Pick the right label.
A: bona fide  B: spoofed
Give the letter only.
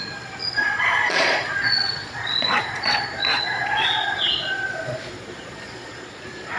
B